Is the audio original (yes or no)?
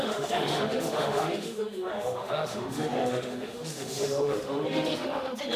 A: no